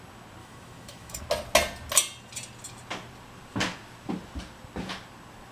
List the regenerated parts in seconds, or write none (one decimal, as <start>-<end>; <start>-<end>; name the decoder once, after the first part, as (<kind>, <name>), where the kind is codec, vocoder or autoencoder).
0.4-1.2 (autoencoder, DAC-VAE)